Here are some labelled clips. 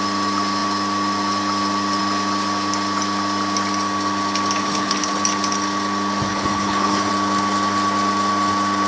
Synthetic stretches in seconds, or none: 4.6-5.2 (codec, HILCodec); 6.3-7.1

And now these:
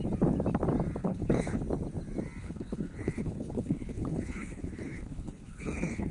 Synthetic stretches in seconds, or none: 1.0-1.6 (codec, HILCodec); 2.4-6.1